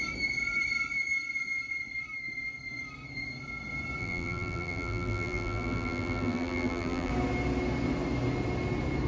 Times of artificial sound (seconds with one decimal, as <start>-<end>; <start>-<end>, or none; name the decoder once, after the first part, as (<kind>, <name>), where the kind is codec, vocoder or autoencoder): 4.0-7.1 (vocoder, BigVGAN v2)